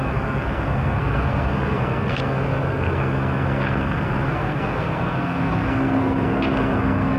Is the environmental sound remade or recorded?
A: remade